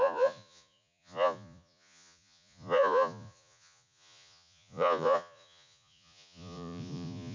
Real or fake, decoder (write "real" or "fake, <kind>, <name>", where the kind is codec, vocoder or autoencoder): fake, vocoder, Vocos